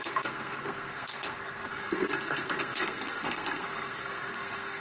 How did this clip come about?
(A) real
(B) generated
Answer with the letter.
B